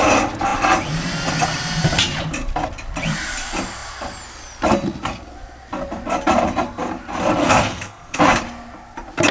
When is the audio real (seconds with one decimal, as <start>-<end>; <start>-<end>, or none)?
0.0-7.4; 8.2-9.3

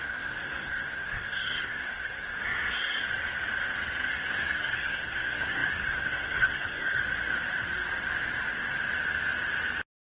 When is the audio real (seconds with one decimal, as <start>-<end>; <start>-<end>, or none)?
3.0-4.1; 7.0-10.0